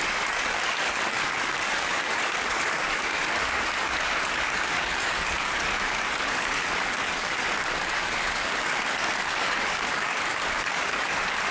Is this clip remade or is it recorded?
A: remade